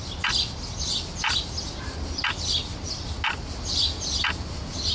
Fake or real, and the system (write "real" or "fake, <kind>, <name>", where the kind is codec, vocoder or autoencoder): real